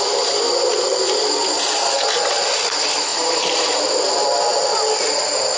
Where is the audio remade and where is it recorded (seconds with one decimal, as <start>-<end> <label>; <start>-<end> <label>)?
0.0-3.1 recorded; 3.1-3.8 remade; 3.8-5.6 recorded

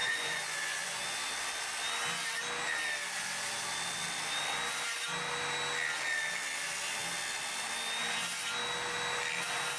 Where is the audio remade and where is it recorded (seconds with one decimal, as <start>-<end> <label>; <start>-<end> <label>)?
0.0-1.0 remade; 1.0-9.8 recorded

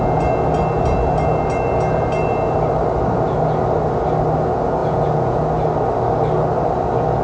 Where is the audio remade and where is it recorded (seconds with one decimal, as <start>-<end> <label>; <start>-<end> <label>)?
0.0-4.8 recorded; 4.8-5.4 remade; 5.4-7.2 recorded

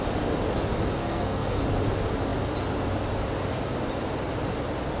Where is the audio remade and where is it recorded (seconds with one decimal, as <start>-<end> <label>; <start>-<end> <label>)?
0.0-1.0 recorded; 1.0-1.6 remade; 1.6-5.0 recorded

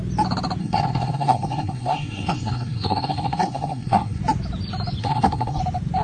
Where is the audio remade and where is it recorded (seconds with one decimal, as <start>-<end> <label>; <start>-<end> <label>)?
0.0-0.6 recorded; 0.6-4.2 remade; 4.2-5.0 recorded; 5.0-5.6 remade; 5.6-6.0 recorded

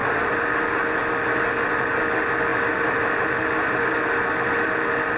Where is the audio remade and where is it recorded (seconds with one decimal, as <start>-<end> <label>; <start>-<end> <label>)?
0.0-5.2 recorded

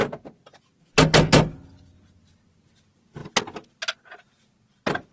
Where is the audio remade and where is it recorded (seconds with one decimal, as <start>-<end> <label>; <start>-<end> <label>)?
0.0-5.1 recorded